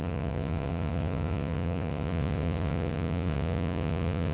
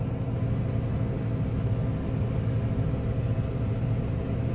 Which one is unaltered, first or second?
second